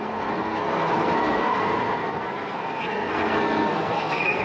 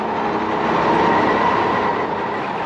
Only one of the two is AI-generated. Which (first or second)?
first